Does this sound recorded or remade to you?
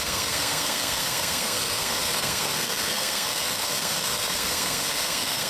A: remade